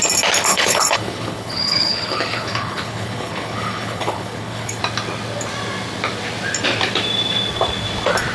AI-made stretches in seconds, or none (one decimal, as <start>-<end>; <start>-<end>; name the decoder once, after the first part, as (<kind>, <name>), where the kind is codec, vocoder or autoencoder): 0.5-4.8 (codec, HILCodec)